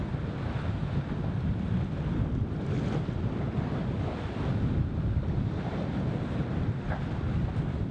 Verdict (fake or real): real